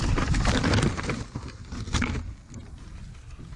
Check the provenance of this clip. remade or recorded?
recorded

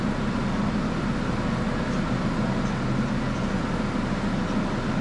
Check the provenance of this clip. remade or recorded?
recorded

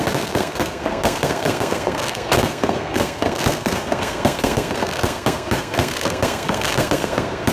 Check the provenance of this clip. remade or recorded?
remade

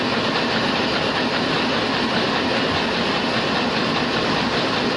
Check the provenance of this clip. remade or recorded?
recorded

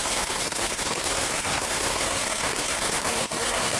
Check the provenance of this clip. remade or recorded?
remade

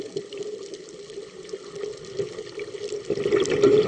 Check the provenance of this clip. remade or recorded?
recorded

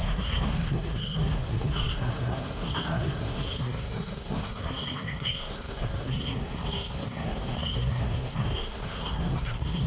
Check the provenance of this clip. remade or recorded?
remade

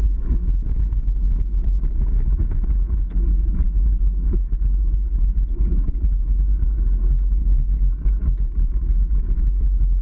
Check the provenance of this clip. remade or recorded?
recorded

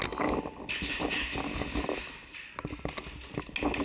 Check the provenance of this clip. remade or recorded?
recorded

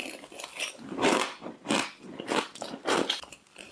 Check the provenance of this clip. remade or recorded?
recorded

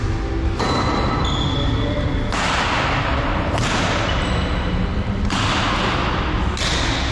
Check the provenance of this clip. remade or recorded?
recorded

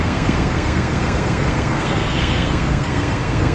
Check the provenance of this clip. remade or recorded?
remade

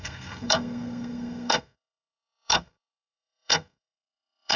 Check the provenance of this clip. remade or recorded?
remade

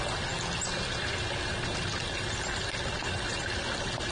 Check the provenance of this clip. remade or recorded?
recorded